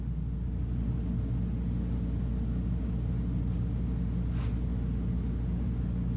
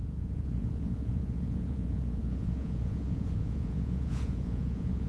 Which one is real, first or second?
first